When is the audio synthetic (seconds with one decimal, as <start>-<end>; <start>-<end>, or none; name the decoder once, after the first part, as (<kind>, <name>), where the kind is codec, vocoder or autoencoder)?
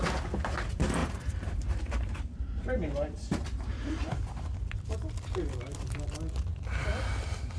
1.0-5.1 (vocoder, BigVGAN v2)